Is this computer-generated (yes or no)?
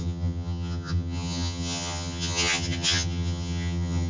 yes